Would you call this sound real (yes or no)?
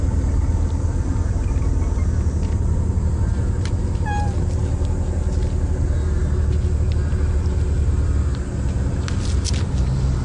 yes